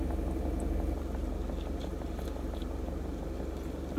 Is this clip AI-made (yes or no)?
no